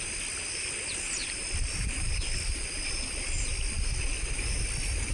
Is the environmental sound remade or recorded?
recorded